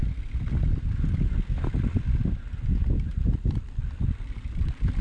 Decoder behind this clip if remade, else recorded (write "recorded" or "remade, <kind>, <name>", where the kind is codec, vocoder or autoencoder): recorded